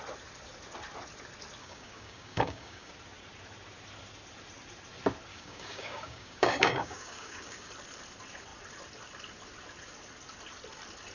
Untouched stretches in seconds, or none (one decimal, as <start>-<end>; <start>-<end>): 0.0-1.6; 2.9-5.3; 7.7-11.1